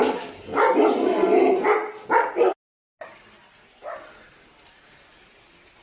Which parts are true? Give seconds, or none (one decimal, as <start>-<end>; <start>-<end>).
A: 0.0-5.8